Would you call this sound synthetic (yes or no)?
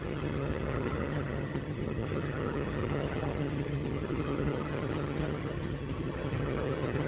yes